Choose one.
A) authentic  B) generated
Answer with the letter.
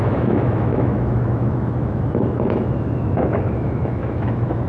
B